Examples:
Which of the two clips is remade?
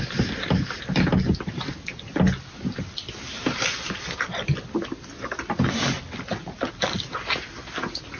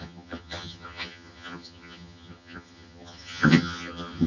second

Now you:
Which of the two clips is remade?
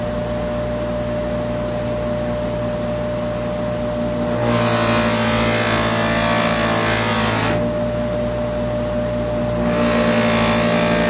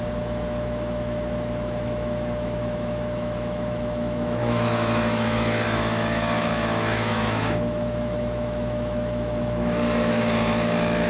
second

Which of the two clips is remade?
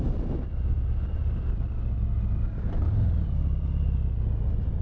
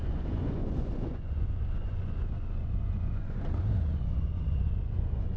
second